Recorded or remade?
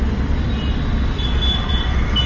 recorded